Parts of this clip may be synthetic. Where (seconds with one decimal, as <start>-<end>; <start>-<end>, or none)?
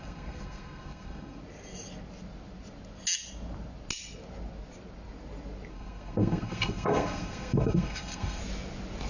0.0-1.4; 5.7-8.4